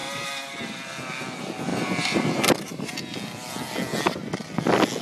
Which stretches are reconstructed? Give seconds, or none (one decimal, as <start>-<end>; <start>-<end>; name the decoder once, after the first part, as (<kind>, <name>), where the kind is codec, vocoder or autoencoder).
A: 0.0-0.6 (vocoder, BigVGAN v2); 1.7-2.9